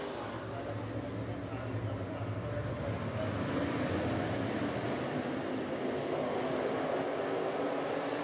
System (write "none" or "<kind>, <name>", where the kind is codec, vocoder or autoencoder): none